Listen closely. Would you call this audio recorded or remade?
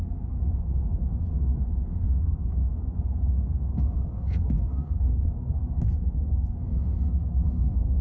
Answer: remade